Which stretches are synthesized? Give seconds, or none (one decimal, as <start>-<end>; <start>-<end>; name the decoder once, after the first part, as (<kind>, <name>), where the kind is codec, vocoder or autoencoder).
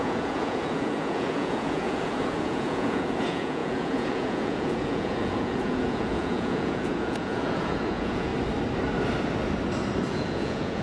0.0-8.3 (vocoder, Vocos); 10.1-10.8